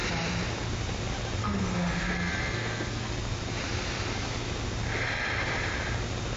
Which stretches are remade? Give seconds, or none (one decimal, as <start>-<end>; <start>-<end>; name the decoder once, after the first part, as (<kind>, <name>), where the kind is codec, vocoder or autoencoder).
1.4-3.1 (codec, SNAC)